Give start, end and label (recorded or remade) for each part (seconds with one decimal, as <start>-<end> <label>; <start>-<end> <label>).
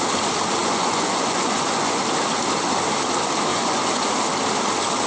0.0-0.6 recorded; 0.6-2.0 remade; 2.0-3.5 recorded; 3.5-4.1 remade; 4.1-5.1 recorded